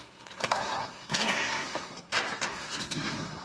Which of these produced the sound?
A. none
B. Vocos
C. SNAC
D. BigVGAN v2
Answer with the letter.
C